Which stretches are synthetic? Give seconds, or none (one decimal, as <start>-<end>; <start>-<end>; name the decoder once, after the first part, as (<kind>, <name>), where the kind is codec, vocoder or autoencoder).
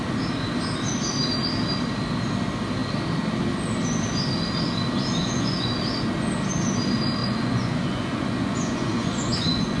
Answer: 5.2-5.7 (vocoder, Vocos); 7.2-9.8